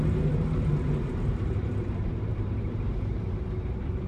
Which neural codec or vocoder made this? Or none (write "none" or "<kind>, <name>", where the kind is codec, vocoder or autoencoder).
vocoder, BigVGAN v2